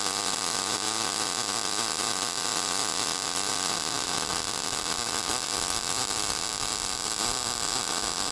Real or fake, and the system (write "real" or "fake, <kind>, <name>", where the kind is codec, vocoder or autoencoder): real